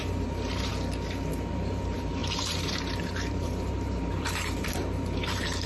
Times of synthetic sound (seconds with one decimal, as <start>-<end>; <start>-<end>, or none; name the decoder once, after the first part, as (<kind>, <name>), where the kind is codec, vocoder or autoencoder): 0.0-0.7 (vocoder, BigVGAN v2); 1.5-5.7